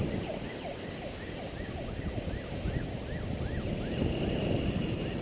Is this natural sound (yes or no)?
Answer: yes